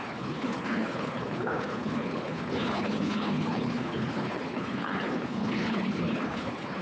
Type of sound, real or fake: fake